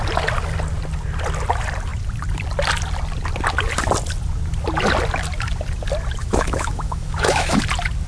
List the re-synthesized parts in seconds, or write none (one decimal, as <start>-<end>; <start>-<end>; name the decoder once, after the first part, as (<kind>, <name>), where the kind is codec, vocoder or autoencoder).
6.2-7.6 (autoencoder, DAC-VAE)